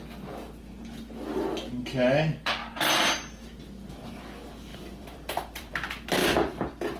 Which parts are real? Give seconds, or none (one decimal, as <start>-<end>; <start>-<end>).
0.0-4.7; 5.7-7.0